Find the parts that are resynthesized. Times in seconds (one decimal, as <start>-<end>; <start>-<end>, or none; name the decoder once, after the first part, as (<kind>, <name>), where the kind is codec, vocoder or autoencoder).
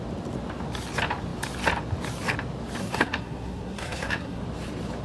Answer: 2.8-4.4 (codec, SNAC)